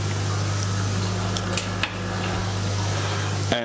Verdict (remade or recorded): recorded